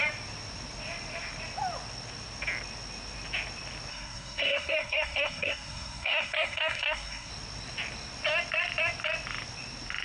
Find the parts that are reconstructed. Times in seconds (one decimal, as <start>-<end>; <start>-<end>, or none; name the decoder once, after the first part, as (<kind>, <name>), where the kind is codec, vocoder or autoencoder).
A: 3.9-7.3 (codec, SNAC)